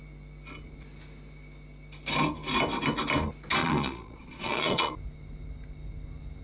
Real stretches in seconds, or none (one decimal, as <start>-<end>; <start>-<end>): 0.0-3.6; 4.9-6.4